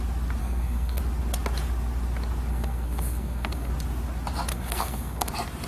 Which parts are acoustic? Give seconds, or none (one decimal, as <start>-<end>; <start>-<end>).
0.0-0.4; 1.0-2.5; 3.7-4.5; 5.3-5.7